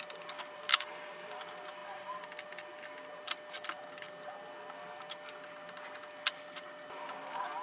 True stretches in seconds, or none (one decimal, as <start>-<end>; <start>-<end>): 0.0-0.7; 1.4-7.6